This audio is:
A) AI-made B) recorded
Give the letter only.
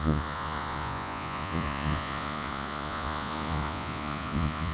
A